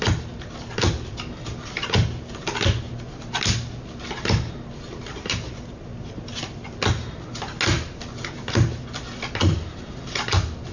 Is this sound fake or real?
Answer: real